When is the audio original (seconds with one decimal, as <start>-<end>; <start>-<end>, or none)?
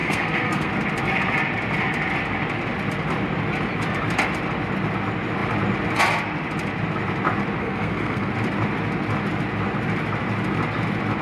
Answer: 0.7-7.6; 8.3-11.2